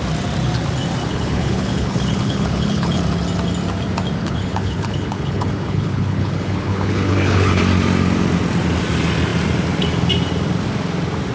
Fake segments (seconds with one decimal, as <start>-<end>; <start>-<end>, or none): 1.0-3.0; 4.2-7.6